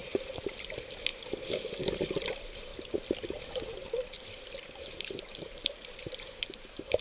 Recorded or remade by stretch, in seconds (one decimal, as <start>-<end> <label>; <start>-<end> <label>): 0.0-1.1 remade; 1.1-1.8 recorded; 1.8-2.7 remade; 2.7-4.8 recorded; 4.8-7.0 remade